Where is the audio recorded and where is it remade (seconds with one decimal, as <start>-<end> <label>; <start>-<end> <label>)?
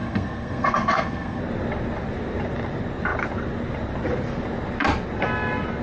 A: 0.0-1.4 remade; 1.4-5.8 recorded